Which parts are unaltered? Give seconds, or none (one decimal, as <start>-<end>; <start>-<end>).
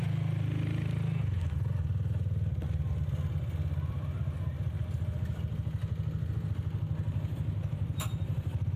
0.0-8.8